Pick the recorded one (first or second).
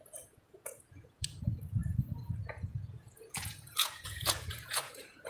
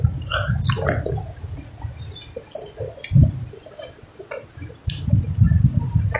second